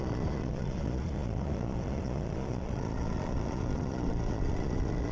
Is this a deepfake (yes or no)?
yes